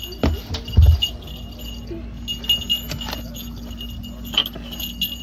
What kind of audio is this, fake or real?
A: real